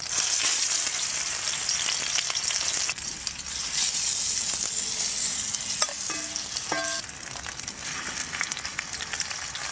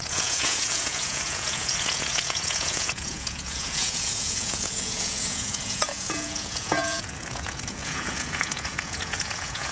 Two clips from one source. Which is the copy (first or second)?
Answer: second